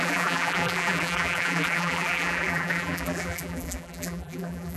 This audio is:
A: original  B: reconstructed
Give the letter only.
B